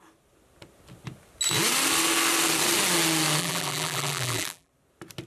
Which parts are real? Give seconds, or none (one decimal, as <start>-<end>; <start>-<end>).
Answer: 0.0-3.4; 4.7-5.3

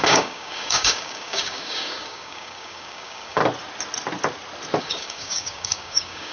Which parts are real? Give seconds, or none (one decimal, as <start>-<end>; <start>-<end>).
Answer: 3.4-4.8

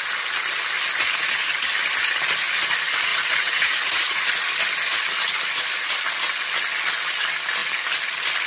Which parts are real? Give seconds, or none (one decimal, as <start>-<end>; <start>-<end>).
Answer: 0.0-3.1; 4.3-8.5

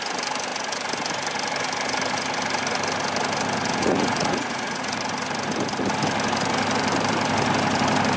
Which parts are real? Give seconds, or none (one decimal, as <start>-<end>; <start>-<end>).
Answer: 0.0-3.8; 5.0-8.2

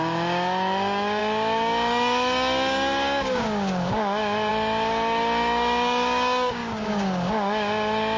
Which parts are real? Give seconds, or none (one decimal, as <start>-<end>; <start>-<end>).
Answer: none